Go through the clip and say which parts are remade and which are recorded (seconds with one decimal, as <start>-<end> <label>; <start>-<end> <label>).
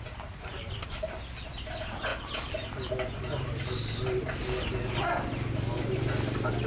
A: 0.0-6.7 recorded